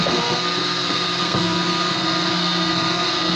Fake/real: fake